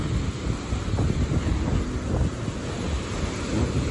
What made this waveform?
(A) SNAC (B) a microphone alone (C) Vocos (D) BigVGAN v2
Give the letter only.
B